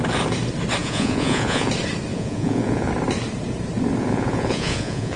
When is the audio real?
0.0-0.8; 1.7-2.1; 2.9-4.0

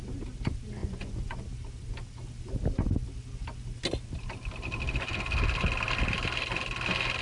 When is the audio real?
0.0-0.8; 1.4-7.2

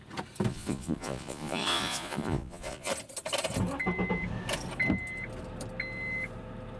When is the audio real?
0.0-0.5; 2.9-6.8

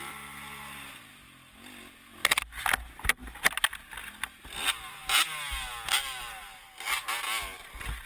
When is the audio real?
0.0-8.1